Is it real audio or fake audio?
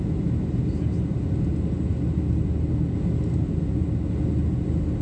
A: real